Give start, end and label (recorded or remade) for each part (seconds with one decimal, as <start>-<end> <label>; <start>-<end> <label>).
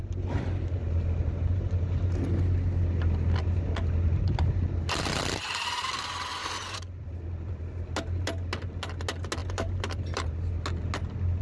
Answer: 0.0-6.3 recorded; 6.3-7.6 remade; 7.6-9.4 recorded; 9.4-10.5 remade; 10.5-11.4 recorded